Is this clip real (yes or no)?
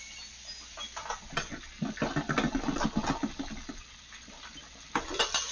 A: yes